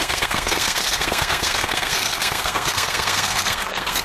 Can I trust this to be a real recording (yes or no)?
no